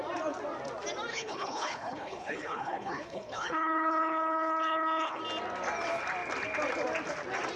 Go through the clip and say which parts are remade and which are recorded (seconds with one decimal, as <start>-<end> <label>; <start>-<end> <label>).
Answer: 0.0-1.1 recorded; 1.1-5.2 remade; 5.2-7.6 recorded